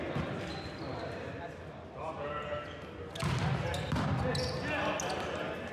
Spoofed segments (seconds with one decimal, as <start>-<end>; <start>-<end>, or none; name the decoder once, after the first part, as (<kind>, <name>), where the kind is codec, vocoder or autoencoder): none